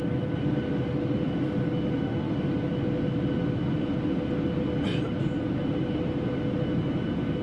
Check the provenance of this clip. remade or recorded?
recorded